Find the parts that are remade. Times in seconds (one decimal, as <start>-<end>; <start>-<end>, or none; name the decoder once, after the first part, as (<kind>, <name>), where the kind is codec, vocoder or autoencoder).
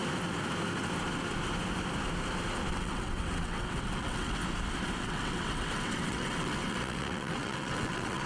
2.7-4.4 (vocoder, WaveNeXt); 5.0-8.3